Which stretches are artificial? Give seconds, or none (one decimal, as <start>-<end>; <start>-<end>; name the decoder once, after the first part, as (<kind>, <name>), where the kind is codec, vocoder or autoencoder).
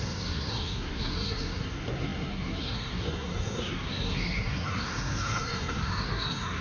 0.0-6.6 (codec, SNAC)